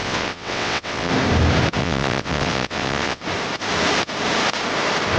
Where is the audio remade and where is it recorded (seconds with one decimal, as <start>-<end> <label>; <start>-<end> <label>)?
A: 0.0-1.1 remade; 1.1-1.8 recorded; 1.8-3.2 remade; 3.2-5.2 recorded